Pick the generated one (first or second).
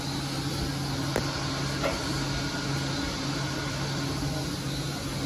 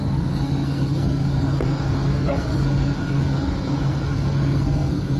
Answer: second